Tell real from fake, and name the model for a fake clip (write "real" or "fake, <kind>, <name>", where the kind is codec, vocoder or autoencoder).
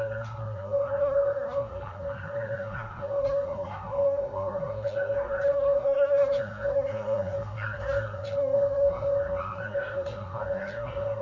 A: fake, codec, SNAC